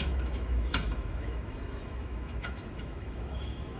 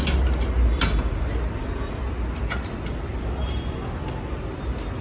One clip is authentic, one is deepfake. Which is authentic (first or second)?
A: second